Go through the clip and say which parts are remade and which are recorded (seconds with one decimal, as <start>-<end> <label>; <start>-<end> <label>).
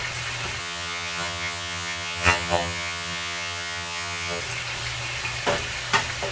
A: 0.0-0.6 recorded; 0.6-4.4 remade; 4.4-6.3 recorded